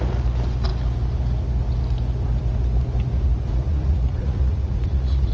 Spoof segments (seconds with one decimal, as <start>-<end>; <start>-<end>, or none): 3.5-5.3